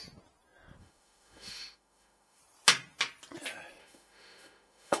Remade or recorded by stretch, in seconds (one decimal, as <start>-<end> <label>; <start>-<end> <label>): 0.0-0.8 recorded; 0.8-2.4 remade; 2.4-3.8 recorded; 3.8-5.0 remade